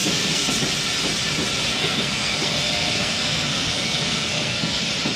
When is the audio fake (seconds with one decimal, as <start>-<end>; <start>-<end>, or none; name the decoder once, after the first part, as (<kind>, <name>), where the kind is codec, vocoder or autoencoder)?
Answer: 0.0-0.5 (codec, SNAC); 1.7-4.8